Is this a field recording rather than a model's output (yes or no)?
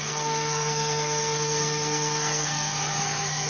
no